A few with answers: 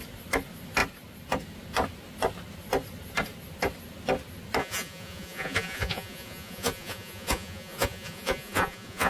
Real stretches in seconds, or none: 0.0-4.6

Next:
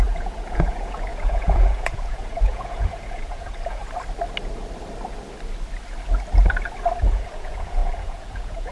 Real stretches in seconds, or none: 3.8-7.0

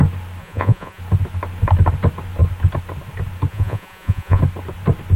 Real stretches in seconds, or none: 0.0-0.4; 1.0-3.5; 4.4-5.2

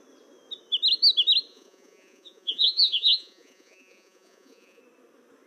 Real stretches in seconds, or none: 0.0-1.5; 4.8-5.5

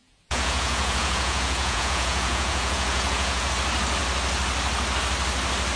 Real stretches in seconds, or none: 3.5-5.8